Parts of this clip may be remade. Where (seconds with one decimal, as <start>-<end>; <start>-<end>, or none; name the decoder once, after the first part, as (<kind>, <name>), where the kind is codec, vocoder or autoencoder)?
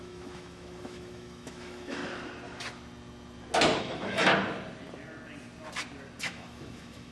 0.0-2.0 (autoencoder, DAC-VAE); 3.8-4.3; 6.2-7.1